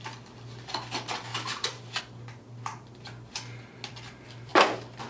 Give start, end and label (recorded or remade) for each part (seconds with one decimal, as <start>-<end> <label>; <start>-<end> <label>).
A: 0.0-1.3 recorded; 1.3-2.0 remade; 2.0-5.1 recorded